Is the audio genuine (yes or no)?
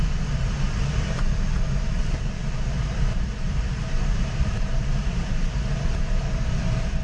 no